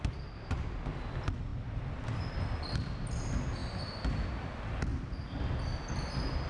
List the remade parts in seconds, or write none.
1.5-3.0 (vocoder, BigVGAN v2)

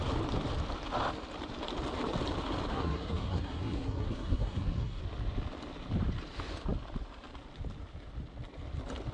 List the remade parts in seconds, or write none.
2.7-5.0 (codec, SNAC)

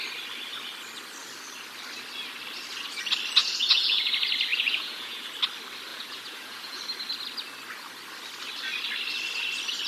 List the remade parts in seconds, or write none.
3.4-4.1 (vocoder, Vocos); 4.5-5.3; 5.9-6.8